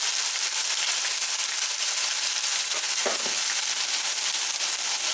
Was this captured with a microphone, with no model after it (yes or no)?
yes